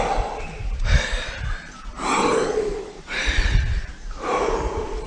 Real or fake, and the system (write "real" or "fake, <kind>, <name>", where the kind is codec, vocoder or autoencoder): real